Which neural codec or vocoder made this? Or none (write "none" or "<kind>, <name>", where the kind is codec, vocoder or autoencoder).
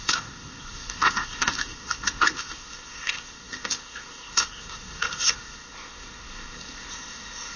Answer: codec, ZipCodec